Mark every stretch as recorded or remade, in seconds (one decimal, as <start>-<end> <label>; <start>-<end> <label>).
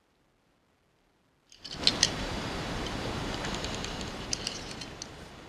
0.0-1.9 recorded; 1.9-4.6 remade; 4.6-5.5 recorded